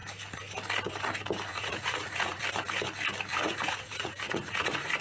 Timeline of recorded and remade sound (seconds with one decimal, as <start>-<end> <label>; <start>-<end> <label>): 0.0-1.5 recorded; 1.5-2.4 remade; 2.4-3.3 recorded; 3.3-5.0 remade